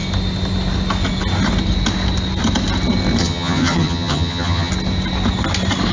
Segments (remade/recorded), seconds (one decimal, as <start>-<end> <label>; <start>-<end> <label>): 0.0-3.2 recorded; 3.2-4.7 remade; 4.7-5.9 recorded